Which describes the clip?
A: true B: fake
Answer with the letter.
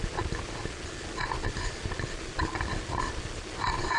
A